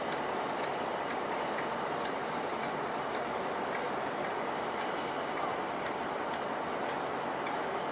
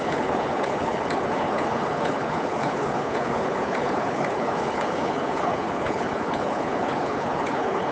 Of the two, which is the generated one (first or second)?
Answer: second